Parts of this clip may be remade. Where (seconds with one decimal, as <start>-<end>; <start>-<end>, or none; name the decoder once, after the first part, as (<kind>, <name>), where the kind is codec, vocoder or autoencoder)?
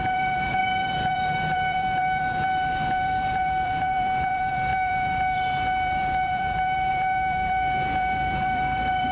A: 0.0-9.1 (vocoder, BigVGAN v2)